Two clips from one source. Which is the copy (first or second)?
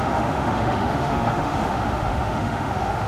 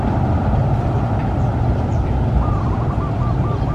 first